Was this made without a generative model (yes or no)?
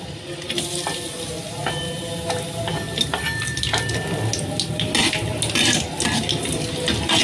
yes